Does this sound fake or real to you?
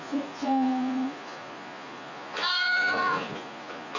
fake